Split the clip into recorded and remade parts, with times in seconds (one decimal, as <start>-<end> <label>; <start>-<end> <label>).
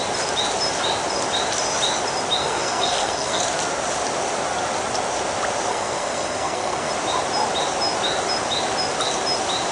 0.0-2.4 recorded; 2.4-3.4 remade; 3.4-5.7 recorded; 5.7-6.9 remade; 6.9-9.7 recorded